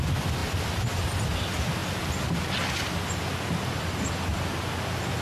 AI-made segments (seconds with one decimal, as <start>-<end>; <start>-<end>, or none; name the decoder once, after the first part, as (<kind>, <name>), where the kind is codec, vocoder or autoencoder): none